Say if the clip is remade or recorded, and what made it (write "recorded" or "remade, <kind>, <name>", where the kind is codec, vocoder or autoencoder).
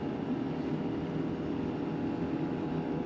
remade, vocoder, BigVGAN v2